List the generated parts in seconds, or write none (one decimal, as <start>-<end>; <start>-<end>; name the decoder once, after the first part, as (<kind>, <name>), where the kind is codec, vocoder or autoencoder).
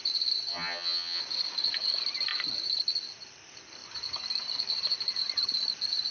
0.5-1.2 (vocoder, HiFi-GAN)